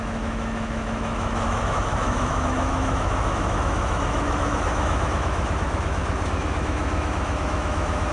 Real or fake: fake